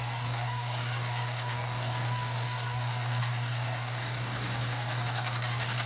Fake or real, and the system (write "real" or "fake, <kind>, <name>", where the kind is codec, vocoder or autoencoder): fake, codec, DAC